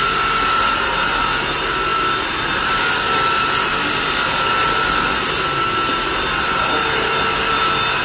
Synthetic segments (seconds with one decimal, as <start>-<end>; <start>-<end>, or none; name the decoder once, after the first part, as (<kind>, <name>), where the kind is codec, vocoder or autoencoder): none